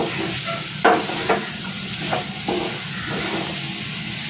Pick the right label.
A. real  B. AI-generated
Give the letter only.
A